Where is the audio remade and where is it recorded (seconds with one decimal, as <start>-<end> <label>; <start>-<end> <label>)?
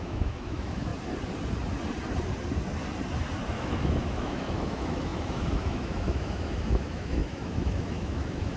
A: 0.0-0.9 remade; 0.9-3.5 recorded; 3.5-8.6 remade